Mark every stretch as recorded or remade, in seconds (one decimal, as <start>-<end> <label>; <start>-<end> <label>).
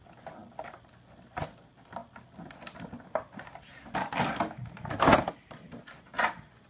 0.0-6.7 recorded